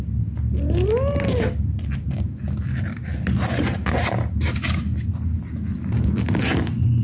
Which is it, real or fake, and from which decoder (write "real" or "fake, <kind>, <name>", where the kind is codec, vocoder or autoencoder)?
real